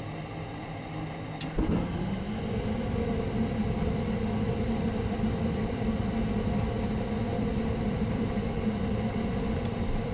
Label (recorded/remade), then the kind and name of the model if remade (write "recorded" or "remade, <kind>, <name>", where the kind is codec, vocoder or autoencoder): recorded